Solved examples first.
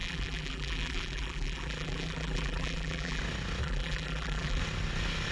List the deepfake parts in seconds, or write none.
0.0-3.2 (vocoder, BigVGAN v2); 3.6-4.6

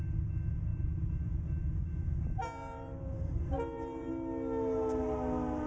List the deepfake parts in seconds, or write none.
0.7-4.1 (vocoder, BigVGAN v2)